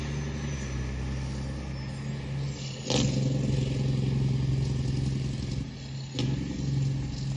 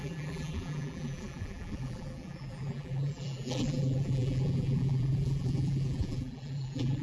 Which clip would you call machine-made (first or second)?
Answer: second